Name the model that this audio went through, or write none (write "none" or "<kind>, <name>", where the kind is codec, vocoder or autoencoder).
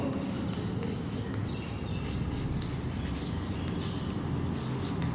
none